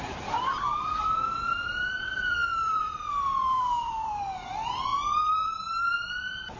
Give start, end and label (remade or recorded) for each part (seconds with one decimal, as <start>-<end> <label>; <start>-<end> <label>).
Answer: 0.0-6.6 remade